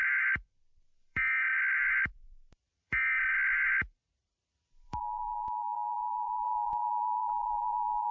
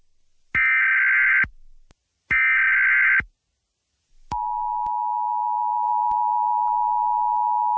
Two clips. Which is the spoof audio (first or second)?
first